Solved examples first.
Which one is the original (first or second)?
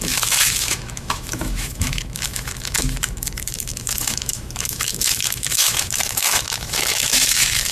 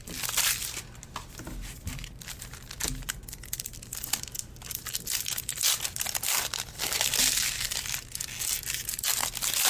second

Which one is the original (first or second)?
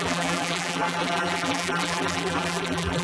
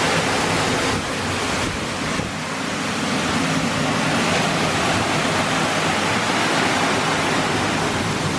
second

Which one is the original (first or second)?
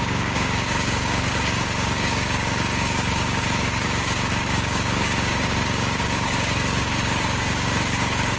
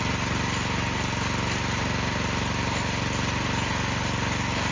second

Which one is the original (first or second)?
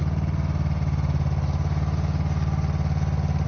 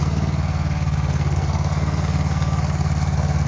first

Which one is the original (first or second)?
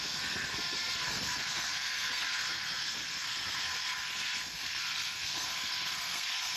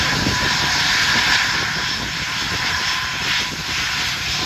second